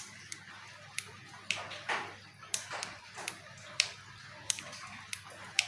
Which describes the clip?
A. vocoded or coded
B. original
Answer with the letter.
B